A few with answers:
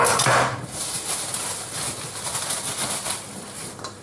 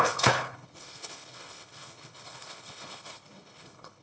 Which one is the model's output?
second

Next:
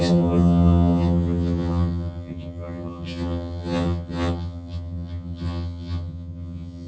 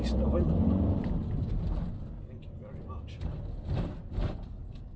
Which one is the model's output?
first